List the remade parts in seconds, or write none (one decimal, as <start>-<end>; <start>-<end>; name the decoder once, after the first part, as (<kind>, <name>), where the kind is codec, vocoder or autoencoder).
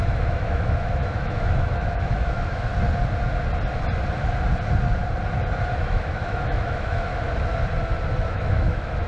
0.0-2.7 (autoencoder, DAC-VAE); 5.8-7.1; 8.3-9.1